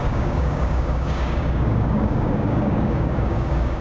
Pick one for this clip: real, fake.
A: fake